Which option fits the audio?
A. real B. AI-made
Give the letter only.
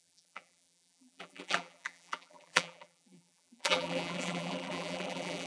B